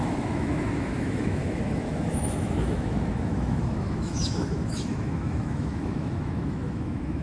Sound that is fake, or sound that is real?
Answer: fake